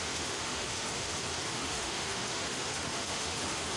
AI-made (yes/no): yes